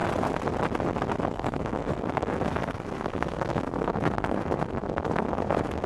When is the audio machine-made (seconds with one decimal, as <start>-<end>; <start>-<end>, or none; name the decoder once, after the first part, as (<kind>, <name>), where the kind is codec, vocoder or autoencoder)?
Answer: 1.3-5.9 (codec, SNAC)